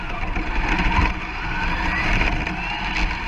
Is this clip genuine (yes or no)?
yes